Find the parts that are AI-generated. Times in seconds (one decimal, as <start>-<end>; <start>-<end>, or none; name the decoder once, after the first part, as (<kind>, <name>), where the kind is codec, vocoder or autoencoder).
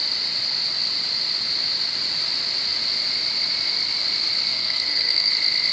4.5-5.3 (codec, SNAC)